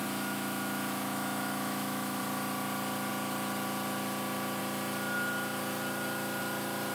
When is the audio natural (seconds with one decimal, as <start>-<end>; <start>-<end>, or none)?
2.2-6.9